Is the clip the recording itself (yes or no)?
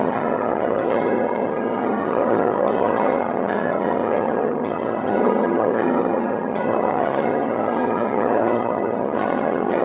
no